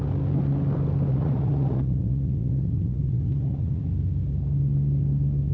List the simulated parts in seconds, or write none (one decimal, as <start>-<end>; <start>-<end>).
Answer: 1.1-3.8